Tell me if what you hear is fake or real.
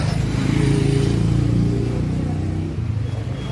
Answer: real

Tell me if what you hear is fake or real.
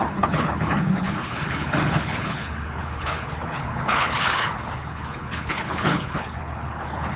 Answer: fake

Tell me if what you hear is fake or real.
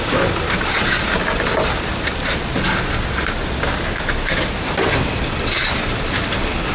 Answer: real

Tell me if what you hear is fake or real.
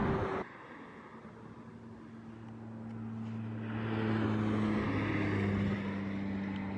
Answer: real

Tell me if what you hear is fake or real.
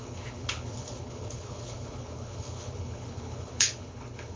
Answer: fake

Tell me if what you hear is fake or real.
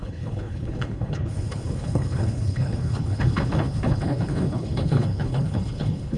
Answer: fake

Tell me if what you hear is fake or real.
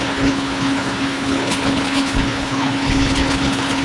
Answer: fake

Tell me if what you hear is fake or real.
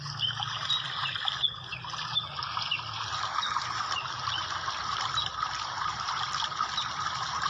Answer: real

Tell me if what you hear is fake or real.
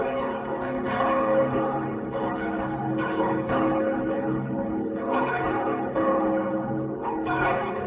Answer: fake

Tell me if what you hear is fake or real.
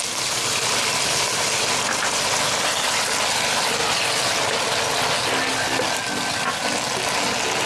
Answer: real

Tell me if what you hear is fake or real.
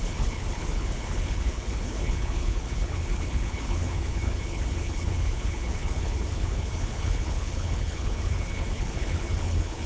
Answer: fake